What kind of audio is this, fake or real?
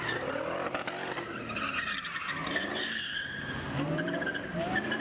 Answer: fake